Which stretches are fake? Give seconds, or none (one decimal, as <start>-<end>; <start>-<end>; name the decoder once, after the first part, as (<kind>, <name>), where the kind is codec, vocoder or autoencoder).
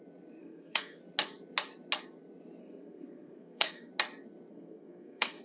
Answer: 0.4-1.0 (codec, SNAC); 2.6-3.9; 4.5-5.4